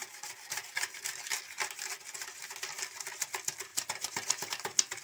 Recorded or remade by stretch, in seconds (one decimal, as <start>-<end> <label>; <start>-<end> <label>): 0.0-3.7 recorded; 3.7-4.5 remade; 4.5-5.0 recorded